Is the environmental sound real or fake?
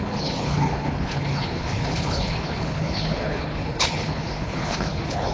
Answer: fake